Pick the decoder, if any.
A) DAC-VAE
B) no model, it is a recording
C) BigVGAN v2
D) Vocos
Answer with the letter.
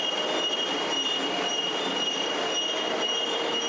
B